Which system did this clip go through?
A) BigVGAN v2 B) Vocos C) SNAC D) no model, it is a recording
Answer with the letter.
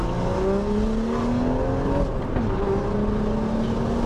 D